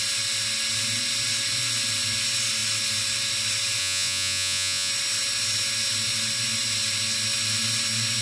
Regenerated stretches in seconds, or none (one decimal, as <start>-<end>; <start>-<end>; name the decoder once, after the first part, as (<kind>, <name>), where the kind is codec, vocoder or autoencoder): 3.8-4.9 (vocoder, Vocos)